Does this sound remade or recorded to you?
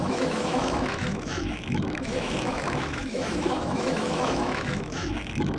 remade